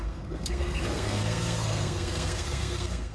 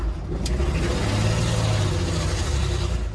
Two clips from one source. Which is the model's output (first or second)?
first